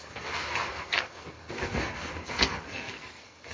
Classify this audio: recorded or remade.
remade